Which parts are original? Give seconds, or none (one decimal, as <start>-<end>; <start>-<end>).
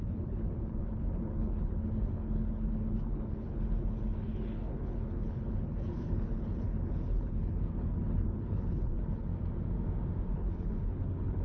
9.3-10.3